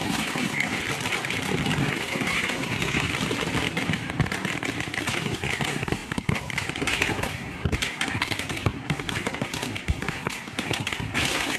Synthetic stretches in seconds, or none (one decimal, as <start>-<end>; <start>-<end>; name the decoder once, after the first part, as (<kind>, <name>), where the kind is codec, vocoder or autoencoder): 0.0-0.8 (codec, SNAC); 1.8-3.1; 5.0-11.6